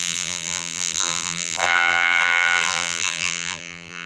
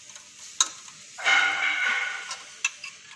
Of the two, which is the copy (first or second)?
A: first